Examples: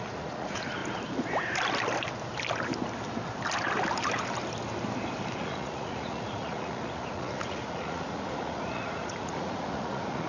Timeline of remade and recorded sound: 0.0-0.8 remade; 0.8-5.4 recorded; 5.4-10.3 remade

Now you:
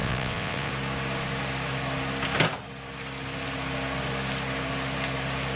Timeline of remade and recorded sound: 0.0-0.7 remade; 0.7-5.6 recorded

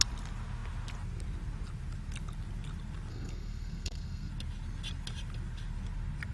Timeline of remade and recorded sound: 0.0-3.1 recorded; 3.1-4.3 remade; 4.3-6.3 recorded

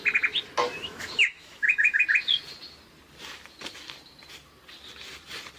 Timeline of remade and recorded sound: 0.0-0.8 recorded; 0.8-2.0 remade; 2.0-5.6 recorded

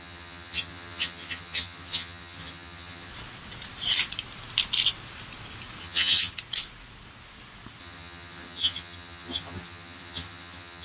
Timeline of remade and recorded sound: 0.0-3.1 remade; 3.1-5.8 recorded; 5.8-6.3 remade; 6.3-7.8 recorded; 7.8-10.8 remade